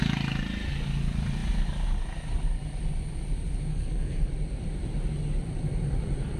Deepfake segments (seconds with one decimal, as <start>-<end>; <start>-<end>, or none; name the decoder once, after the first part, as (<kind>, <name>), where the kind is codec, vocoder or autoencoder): 3.7-4.3 (codec, SNAC)